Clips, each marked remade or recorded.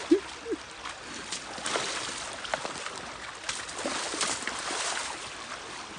recorded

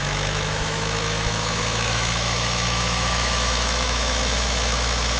remade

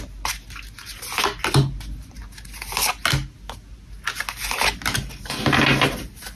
recorded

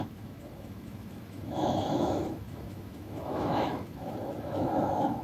remade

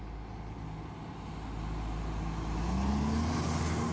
recorded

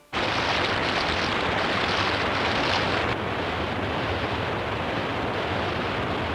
recorded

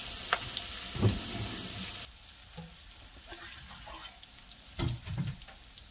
recorded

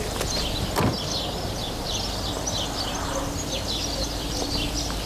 recorded